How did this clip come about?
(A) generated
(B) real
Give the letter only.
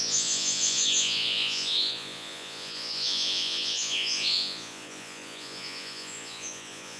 A